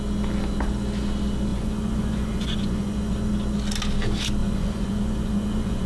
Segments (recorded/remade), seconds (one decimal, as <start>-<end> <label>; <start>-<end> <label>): 0.0-1.5 recorded; 1.5-3.3 remade; 3.3-4.4 recorded; 4.4-5.9 remade